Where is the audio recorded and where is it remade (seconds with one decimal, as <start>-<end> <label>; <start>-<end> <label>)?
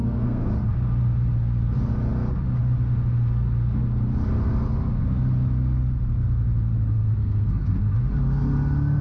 0.0-0.5 remade; 0.5-7.2 recorded; 7.2-7.8 remade; 7.8-9.0 recorded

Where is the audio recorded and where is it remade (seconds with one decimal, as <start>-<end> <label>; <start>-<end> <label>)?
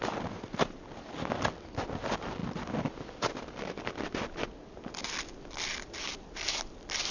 0.0-7.1 recorded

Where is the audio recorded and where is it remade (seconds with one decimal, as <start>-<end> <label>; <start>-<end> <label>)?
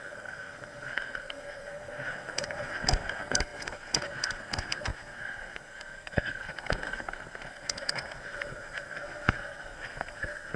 0.0-10.6 remade